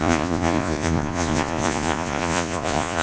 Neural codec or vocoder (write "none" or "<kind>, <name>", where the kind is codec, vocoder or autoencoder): vocoder, Vocos